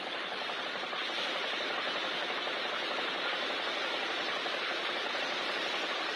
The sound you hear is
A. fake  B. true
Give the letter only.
B